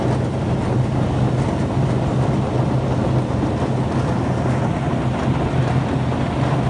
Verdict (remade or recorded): recorded